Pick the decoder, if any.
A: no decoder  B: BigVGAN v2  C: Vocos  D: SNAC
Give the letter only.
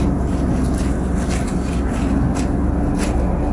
A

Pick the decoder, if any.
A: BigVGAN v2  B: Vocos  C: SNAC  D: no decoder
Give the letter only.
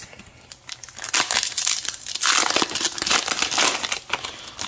D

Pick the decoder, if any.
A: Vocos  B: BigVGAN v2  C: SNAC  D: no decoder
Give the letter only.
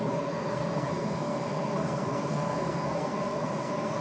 C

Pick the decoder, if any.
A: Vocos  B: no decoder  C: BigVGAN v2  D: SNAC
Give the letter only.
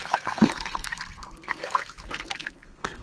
D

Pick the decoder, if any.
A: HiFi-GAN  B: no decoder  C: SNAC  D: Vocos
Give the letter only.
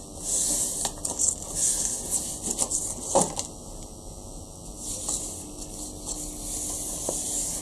B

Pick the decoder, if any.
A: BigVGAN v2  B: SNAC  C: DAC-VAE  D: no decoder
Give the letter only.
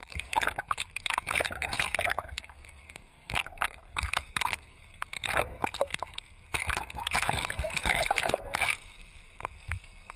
B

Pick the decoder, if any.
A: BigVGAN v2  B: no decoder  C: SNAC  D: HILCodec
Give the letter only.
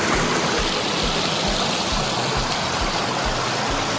B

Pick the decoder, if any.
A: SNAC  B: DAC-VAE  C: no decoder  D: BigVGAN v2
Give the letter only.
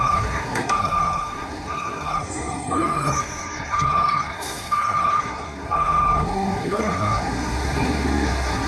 A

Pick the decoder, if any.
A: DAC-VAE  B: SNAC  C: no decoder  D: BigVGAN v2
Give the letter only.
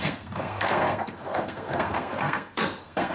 B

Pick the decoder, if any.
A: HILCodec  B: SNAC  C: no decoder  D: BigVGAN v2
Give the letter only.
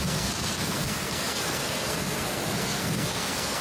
B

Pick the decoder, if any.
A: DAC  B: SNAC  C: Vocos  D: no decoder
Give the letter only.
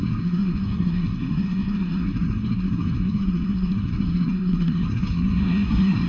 B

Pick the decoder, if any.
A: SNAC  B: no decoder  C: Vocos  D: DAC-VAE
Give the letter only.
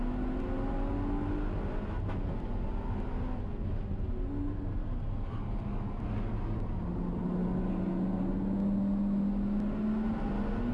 B